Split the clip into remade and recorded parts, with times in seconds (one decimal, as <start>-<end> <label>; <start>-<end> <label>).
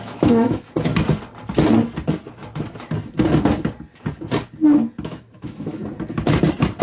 0.0-0.9 remade; 0.9-5.0 recorded; 5.0-5.8 remade; 5.8-6.8 recorded